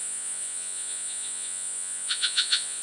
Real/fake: fake